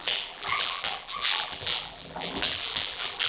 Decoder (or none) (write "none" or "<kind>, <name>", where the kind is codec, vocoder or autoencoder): vocoder, BigVGAN v2